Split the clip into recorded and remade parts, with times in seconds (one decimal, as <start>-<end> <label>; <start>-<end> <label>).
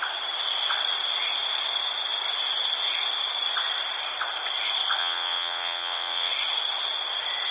0.0-5.0 recorded; 5.0-6.3 remade; 6.3-7.5 recorded